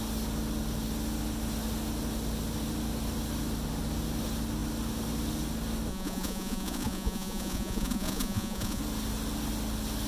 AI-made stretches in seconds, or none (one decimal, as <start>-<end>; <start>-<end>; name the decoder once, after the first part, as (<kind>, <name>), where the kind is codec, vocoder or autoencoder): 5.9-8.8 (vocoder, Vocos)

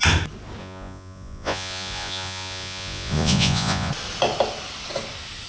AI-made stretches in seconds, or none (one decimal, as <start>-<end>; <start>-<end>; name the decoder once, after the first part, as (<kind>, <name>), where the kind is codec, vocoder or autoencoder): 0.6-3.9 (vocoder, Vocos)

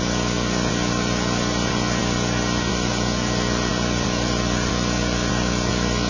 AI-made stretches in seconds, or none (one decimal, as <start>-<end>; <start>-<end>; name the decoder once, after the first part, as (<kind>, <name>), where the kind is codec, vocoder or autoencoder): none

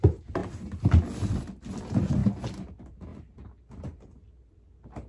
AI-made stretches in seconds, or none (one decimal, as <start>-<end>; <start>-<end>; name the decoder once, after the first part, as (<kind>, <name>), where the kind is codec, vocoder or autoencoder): none

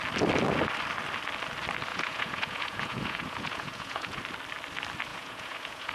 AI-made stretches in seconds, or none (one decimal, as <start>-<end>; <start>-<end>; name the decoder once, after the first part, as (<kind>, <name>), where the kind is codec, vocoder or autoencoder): 1.9-4.2 (vocoder, Vocos); 5.1-5.9